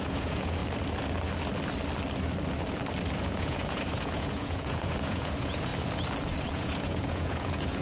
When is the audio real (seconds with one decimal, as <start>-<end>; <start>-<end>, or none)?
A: 0.6-3.2; 5.7-6.5